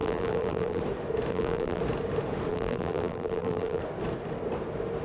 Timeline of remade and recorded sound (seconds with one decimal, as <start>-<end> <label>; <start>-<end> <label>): 0.0-0.8 remade; 0.8-1.3 recorded; 1.3-1.8 remade; 1.8-2.5 recorded; 2.5-3.8 remade; 3.8-5.0 recorded